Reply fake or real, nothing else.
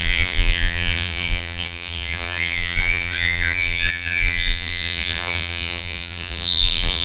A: fake